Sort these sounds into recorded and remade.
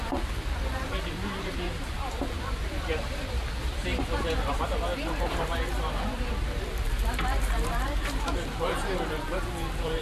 remade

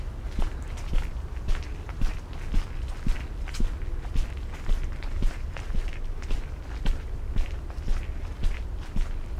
recorded